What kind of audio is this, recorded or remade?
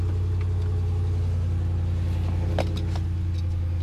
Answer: recorded